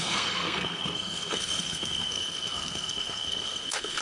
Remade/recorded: remade